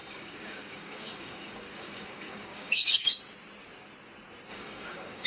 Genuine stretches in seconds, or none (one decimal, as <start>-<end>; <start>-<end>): 3.2-4.5

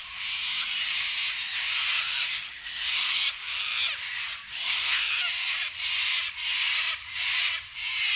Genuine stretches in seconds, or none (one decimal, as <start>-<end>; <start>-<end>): 0.0-2.3; 3.2-4.5; 5.1-8.2